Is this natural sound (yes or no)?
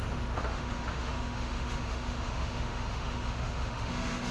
no